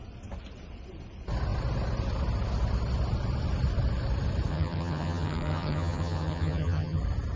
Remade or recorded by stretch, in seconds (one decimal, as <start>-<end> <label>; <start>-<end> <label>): 0.0-4.5 recorded; 4.5-7.0 remade; 7.0-7.4 recorded